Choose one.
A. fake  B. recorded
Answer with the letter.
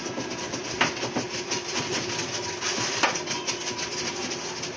B